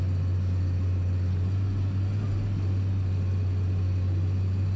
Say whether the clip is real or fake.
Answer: real